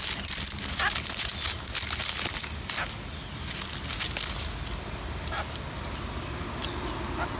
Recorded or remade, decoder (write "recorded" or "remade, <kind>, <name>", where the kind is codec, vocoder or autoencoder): recorded